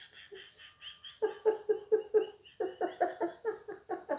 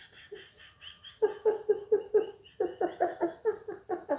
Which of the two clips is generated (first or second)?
second